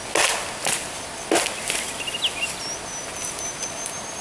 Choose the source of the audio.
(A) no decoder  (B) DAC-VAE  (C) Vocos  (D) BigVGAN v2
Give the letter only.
A